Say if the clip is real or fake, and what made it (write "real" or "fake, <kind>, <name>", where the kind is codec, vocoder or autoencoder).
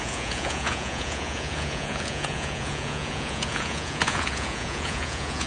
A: fake, vocoder, Vocos